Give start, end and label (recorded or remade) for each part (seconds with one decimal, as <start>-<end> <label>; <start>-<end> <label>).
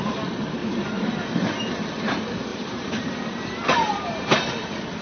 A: 0.0-0.6 recorded; 0.6-1.1 remade; 1.1-2.5 recorded; 2.5-5.0 remade